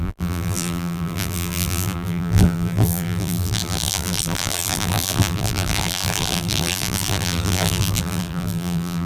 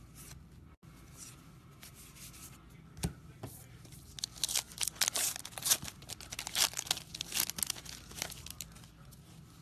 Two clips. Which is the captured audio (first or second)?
second